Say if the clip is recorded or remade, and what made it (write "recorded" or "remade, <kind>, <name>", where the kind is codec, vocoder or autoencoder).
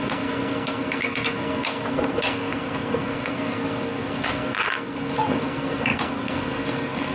remade, codec, SNAC